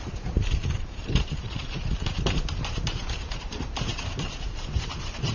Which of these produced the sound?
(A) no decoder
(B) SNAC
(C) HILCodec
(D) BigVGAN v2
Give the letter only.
D